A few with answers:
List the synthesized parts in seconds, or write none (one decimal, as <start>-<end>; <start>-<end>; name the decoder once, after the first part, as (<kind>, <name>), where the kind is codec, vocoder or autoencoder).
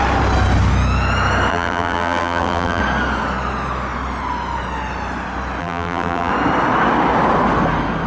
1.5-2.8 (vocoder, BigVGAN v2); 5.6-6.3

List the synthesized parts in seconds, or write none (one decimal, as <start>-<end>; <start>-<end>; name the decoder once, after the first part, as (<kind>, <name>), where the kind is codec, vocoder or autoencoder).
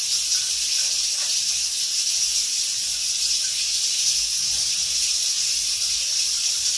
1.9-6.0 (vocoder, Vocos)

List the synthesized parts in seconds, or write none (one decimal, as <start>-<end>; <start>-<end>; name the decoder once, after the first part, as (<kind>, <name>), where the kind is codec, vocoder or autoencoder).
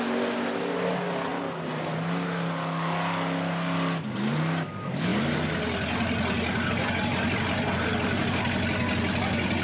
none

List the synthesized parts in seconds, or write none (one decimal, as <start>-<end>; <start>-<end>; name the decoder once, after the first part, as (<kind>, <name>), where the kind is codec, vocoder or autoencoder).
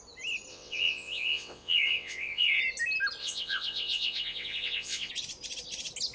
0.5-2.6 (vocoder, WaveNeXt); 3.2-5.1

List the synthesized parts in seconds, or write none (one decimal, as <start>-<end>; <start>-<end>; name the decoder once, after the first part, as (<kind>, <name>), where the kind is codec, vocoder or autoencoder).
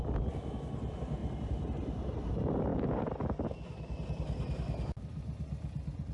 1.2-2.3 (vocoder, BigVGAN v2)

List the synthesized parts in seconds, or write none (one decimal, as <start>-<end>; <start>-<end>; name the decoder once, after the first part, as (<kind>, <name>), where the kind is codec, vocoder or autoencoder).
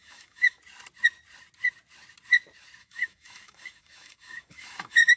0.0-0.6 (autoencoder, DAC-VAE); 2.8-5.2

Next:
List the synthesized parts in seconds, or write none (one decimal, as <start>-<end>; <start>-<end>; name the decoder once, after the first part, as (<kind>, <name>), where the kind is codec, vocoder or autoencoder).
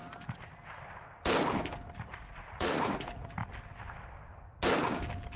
2.0-3.4 (vocoder, Vocos)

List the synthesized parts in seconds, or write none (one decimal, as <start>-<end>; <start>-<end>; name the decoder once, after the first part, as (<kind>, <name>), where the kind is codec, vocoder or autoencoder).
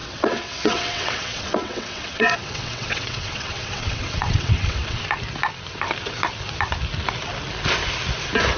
0.0-5.0 (vocoder, WaveNeXt)